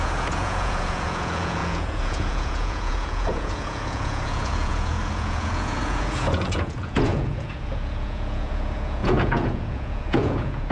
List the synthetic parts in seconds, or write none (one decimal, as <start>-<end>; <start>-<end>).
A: 0.0-10.7